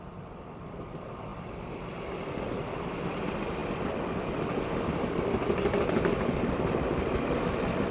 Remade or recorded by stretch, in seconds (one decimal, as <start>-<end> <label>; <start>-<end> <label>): 0.0-7.9 recorded